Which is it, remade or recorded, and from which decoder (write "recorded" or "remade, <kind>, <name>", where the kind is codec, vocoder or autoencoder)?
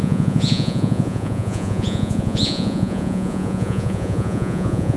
remade, vocoder, Vocos